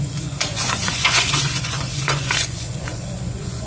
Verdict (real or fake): fake